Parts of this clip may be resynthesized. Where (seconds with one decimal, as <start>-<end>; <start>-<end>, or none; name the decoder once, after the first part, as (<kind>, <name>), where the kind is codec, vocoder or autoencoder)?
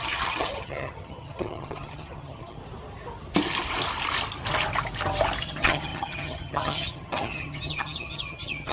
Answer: 0.0-2.6 (vocoder, HiFi-GAN); 5.4-8.7